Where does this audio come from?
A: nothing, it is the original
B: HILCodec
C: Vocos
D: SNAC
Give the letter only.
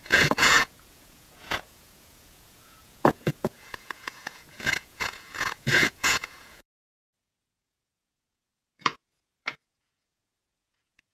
C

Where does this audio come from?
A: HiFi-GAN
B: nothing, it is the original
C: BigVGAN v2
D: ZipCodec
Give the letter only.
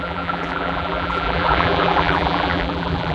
C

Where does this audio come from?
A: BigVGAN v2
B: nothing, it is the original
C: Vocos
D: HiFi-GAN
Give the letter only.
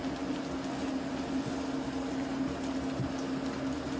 B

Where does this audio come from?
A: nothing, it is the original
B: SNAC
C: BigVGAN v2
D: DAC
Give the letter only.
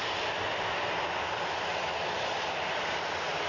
A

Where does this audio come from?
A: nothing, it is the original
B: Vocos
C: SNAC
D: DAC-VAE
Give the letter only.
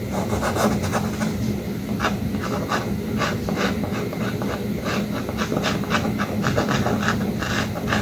A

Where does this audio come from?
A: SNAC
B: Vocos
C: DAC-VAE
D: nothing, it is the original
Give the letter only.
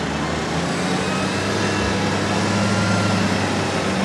D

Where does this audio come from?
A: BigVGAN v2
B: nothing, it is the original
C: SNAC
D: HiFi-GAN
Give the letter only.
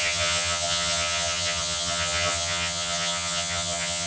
D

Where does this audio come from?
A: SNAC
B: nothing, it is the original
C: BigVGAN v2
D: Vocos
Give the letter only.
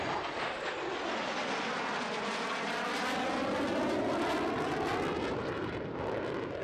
B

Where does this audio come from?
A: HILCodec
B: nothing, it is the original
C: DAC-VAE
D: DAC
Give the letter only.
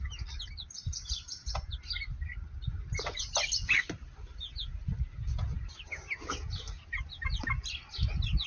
B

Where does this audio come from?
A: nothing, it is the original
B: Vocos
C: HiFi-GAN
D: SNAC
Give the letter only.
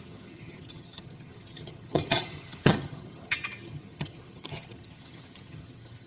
C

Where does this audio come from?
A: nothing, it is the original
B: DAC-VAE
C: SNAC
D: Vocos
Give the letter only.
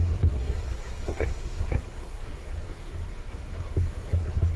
C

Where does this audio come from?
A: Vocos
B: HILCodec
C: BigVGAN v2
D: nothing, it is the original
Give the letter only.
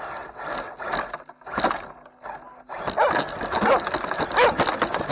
D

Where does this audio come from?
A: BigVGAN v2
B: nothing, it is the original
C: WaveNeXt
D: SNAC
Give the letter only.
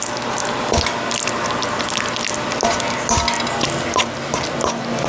B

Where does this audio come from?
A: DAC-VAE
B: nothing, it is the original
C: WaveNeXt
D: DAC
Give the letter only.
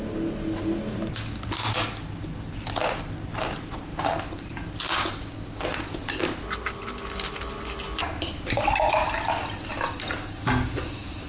B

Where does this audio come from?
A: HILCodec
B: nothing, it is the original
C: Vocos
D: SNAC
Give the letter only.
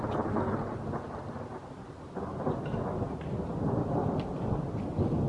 B